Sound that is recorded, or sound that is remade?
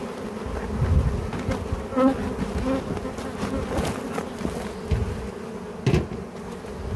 recorded